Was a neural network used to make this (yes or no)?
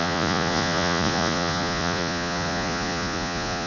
yes